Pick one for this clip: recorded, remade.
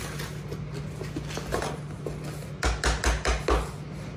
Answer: recorded